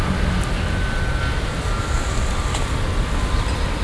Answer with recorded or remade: recorded